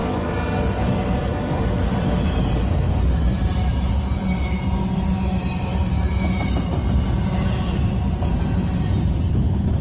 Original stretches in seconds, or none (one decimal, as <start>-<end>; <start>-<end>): 1.3-3.3; 4.2-9.8